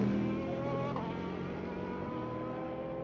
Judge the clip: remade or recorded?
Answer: recorded